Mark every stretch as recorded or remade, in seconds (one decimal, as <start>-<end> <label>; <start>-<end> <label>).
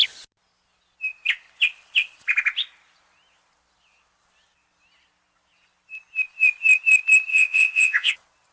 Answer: 0.0-7.3 recorded; 7.3-8.1 remade; 8.1-8.5 recorded